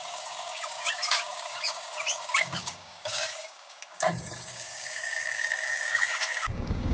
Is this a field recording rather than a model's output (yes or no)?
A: no